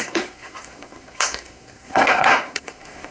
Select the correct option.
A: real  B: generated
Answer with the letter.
B